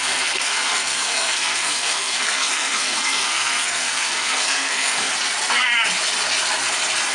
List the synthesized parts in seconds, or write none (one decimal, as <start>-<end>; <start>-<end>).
0.0-5.1